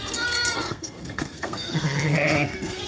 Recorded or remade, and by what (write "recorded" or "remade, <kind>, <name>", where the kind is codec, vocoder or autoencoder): remade, codec, SNAC